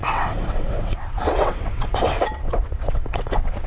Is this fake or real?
fake